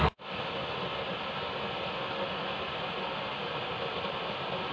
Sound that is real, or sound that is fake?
real